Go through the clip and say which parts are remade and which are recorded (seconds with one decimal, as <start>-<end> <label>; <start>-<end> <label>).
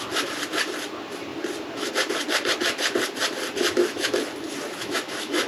0.0-3.6 recorded; 3.6-4.2 remade; 4.2-4.8 recorded; 4.8-5.5 remade